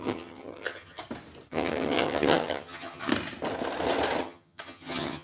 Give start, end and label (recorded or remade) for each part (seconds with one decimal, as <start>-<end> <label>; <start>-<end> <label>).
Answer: 0.0-1.0 remade; 1.0-1.5 recorded; 1.5-3.1 remade; 3.1-4.2 recorded; 4.2-5.2 remade